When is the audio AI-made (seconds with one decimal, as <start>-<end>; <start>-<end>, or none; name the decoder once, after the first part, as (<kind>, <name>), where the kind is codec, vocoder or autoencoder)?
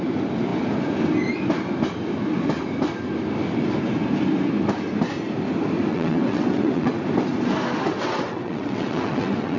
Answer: 5.9-7.0 (vocoder, WaveNeXt); 7.9-9.6